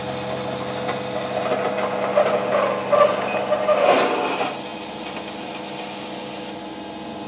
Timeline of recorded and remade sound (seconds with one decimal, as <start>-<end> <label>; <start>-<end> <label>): 0.0-7.3 recorded